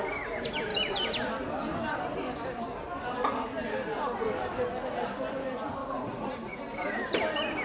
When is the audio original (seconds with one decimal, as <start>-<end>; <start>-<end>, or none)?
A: 0.0-5.8; 6.6-7.6